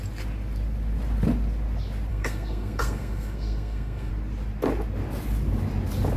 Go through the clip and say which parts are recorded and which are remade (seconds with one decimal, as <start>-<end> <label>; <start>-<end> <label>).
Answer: 0.0-2.1 recorded; 2.1-4.1 remade; 4.1-6.2 recorded